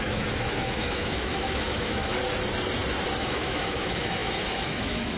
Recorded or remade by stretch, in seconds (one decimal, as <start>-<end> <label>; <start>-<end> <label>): 0.0-2.1 remade; 2.1-3.2 recorded; 3.2-5.2 remade